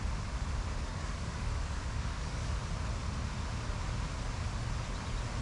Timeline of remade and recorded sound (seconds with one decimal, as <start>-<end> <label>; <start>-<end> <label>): 0.0-0.9 recorded; 0.9-2.6 remade; 2.6-5.4 recorded